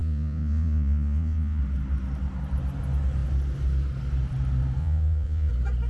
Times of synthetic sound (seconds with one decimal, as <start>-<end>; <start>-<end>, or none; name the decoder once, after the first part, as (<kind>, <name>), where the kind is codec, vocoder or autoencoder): 0.0-1.6 (vocoder, Vocos); 4.8-5.5

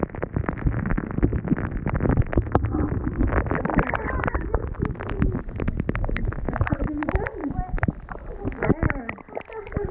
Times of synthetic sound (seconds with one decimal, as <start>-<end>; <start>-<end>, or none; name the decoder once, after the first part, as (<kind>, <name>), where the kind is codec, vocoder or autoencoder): none

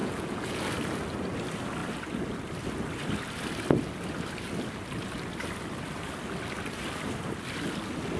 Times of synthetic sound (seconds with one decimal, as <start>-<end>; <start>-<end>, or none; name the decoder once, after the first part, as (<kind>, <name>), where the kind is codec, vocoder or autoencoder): 0.0-0.6 (vocoder, Vocos)

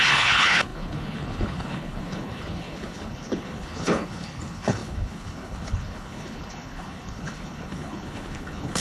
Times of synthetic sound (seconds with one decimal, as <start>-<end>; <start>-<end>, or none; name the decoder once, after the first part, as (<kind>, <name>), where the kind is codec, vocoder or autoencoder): 0.0-8.8 (codec, HILCodec)